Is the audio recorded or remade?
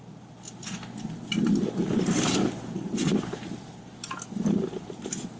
recorded